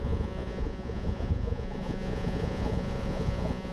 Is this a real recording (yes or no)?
no